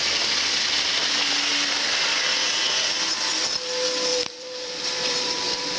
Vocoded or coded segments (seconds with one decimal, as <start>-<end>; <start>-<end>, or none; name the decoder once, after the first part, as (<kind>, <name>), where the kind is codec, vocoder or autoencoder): 4.1-5.8 (vocoder, BigVGAN v2)

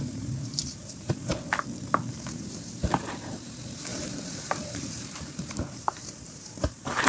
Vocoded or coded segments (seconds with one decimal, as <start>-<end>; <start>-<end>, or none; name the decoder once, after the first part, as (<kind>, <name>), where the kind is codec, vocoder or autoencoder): 0.0-1.3 (vocoder, BigVGAN v2); 2.1-7.1

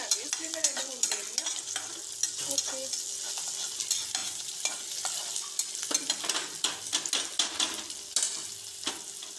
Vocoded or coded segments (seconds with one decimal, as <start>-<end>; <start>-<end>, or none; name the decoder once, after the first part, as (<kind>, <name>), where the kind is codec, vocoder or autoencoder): 1.4-2.4 (vocoder, BigVGAN v2); 4.2-4.8

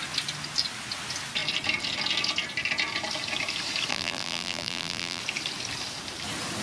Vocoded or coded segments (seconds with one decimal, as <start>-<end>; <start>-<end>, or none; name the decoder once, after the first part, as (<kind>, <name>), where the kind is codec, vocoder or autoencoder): 3.9-5.2 (vocoder, BigVGAN v2)

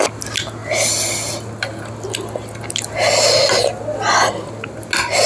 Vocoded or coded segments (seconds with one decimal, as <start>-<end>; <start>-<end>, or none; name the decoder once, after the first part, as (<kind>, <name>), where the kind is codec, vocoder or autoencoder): none

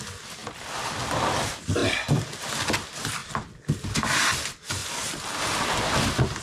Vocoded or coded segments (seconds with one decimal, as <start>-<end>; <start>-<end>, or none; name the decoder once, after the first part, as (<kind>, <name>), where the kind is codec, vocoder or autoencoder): none

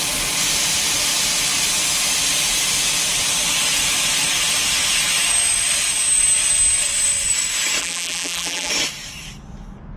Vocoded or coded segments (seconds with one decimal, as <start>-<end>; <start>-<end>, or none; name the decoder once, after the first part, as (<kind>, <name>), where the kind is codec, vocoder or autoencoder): 7.8-8.7 (vocoder, BigVGAN v2)